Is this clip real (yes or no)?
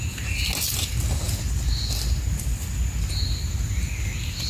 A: yes